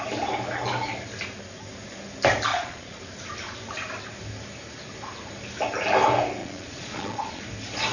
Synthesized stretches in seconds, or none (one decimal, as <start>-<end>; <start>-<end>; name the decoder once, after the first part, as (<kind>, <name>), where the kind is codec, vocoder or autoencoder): 2.5-3.0 (vocoder, Vocos); 6.4-7.4